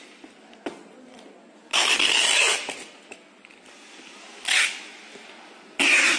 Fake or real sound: real